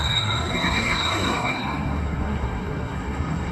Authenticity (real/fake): fake